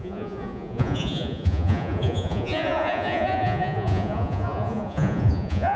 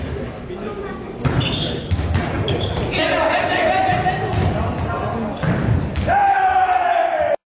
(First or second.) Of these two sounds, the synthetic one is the first